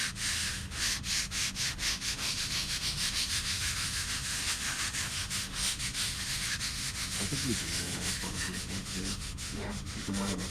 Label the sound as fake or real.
fake